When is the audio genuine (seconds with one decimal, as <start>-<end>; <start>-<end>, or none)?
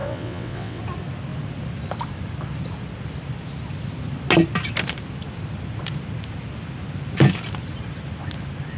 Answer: 0.8-8.8